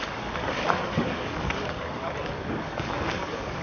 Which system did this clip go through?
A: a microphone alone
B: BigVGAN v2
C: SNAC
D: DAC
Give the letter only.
D